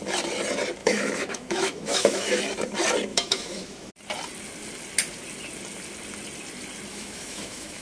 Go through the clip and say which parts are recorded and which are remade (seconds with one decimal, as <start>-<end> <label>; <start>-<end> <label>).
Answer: 0.0-0.8 recorded; 0.8-2.4 remade; 2.4-3.1 recorded; 3.1-3.9 remade; 3.9-6.9 recorded; 6.9-7.8 remade